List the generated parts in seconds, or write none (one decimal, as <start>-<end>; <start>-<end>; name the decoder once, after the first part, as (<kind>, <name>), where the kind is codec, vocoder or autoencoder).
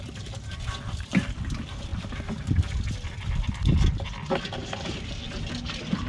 none